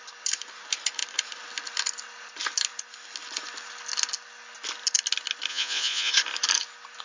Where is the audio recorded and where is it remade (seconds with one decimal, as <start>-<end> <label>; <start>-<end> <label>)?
0.0-5.5 recorded; 5.5-6.1 remade; 6.1-7.0 recorded